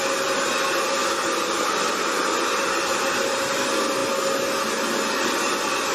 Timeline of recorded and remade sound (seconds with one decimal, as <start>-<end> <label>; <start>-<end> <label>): 0.0-5.9 recorded